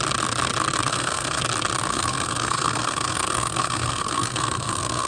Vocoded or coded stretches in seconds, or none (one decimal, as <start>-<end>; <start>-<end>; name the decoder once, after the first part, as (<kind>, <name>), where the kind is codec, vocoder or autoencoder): 0.9-1.4 (codec, SNAC); 1.9-5.1